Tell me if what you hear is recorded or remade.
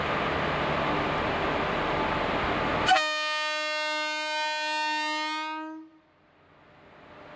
recorded